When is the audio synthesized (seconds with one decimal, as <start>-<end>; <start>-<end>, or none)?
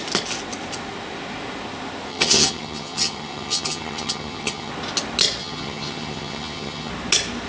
2.1-4.7; 5.4-6.9